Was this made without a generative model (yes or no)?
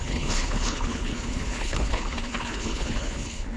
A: no